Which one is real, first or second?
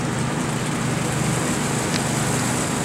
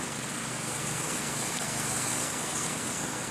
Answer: first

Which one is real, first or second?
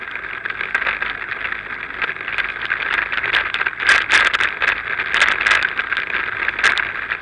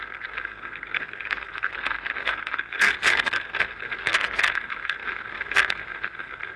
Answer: first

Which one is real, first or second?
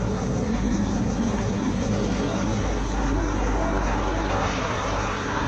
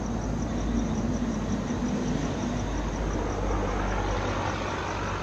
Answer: second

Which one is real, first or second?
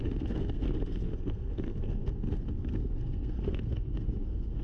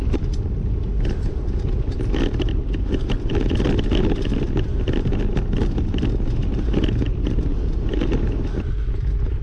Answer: second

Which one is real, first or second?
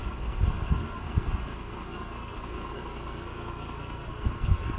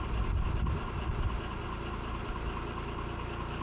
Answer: second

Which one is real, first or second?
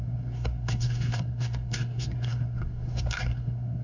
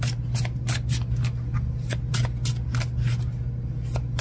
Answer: second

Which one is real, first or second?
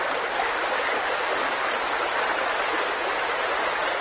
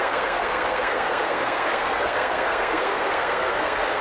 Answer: first